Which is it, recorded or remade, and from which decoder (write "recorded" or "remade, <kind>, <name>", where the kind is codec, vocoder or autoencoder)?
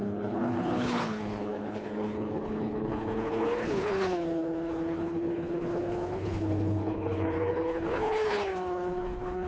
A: remade, codec, HILCodec